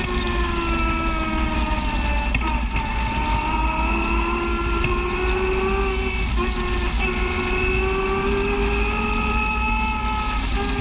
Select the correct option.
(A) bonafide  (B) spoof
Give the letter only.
A